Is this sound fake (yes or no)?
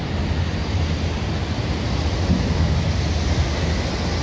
no